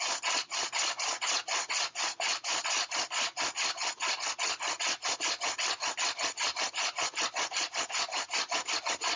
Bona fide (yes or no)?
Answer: yes